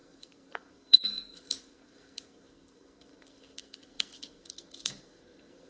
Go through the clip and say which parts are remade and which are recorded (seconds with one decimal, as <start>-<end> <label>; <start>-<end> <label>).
0.0-5.7 remade